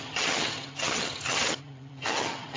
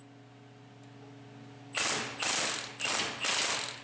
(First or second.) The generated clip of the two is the first